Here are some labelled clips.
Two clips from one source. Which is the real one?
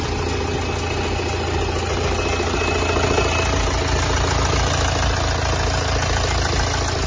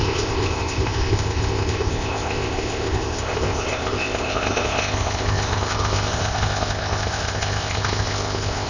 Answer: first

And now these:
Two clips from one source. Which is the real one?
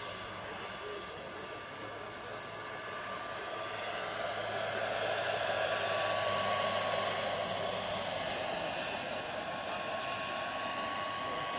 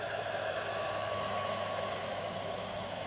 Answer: first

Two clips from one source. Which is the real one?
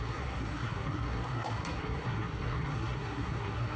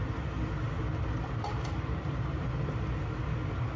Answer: second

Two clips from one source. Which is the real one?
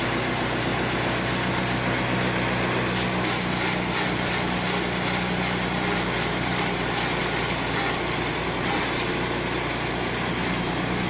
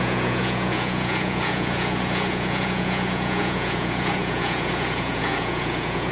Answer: first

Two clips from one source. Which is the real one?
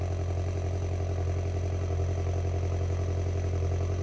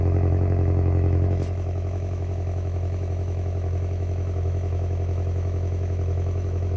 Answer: first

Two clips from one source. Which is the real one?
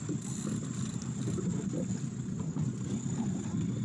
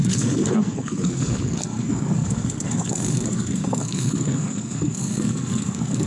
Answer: first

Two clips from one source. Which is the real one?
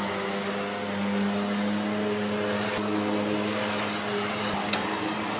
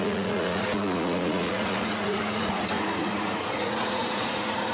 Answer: first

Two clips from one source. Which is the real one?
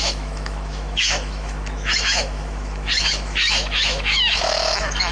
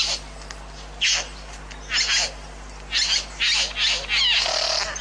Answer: second